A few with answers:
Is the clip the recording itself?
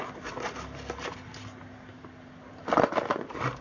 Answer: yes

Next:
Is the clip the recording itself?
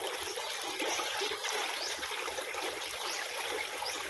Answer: yes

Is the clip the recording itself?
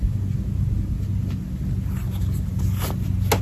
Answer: yes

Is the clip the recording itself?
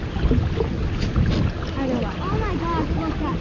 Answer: yes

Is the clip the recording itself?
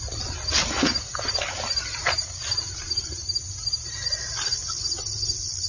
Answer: yes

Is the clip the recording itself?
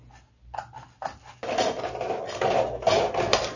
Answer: yes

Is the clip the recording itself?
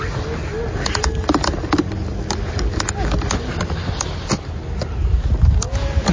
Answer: yes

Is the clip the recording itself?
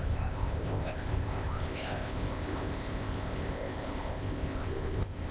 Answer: no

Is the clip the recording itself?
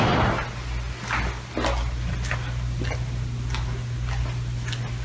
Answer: yes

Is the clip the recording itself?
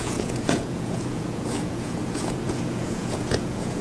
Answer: no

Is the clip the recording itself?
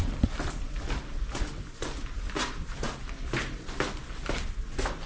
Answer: yes